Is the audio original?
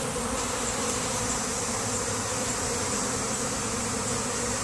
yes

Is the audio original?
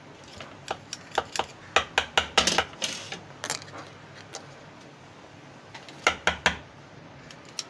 yes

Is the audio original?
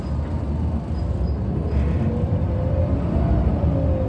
yes